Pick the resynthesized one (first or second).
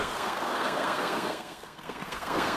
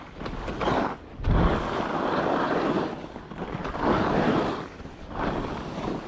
first